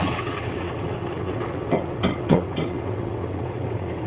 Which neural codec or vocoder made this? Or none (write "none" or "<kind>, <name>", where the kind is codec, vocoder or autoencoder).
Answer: vocoder, WaveNeXt